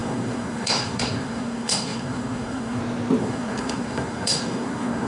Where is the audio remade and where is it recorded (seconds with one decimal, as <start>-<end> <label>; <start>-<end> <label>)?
0.0-2.8 remade; 2.8-3.2 recorded; 3.2-5.1 remade